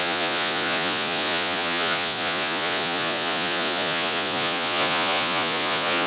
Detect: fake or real fake